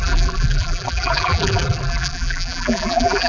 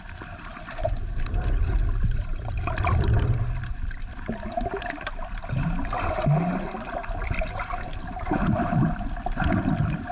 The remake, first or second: first